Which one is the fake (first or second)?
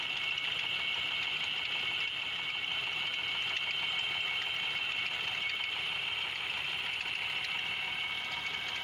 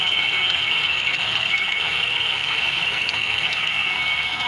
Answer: second